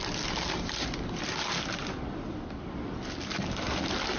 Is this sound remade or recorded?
recorded